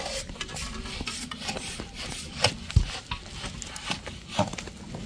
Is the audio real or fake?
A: real